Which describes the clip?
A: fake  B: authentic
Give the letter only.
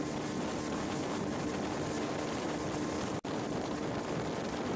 B